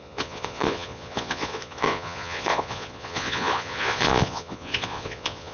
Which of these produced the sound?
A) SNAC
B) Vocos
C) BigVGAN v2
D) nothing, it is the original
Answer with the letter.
B